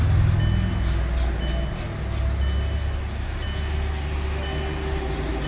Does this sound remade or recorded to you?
recorded